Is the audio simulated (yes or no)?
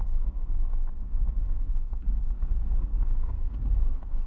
yes